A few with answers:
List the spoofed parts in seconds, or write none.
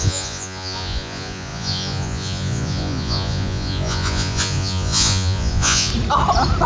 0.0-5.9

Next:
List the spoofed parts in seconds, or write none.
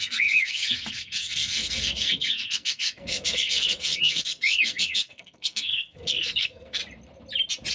0.0-6.8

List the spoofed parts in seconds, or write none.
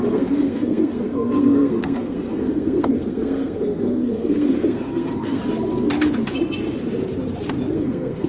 0.0-5.4; 7.7-8.3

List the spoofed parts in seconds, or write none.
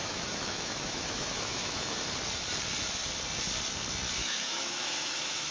0.0-2.0; 4.2-5.5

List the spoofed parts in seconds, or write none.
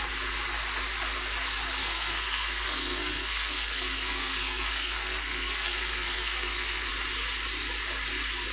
1.8-6.9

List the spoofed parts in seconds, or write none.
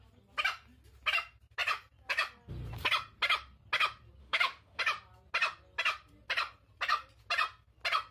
4.2-4.8